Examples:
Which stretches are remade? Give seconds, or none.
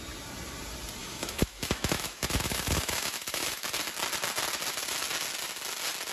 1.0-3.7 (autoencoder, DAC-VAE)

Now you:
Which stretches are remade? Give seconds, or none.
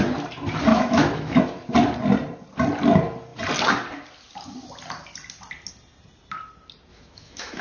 0.7-1.4 (autoencoder, DAC-VAE); 6.9-7.6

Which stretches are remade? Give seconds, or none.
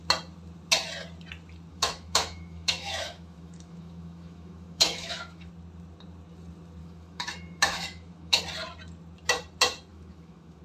1.7-5.5 (autoencoder, DAC-VAE); 6.8-8.4; 9.9-10.6